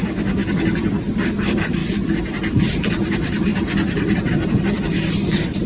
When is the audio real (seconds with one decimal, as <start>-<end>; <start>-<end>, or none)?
0.4-1.0; 1.8-2.3; 3.5-4.3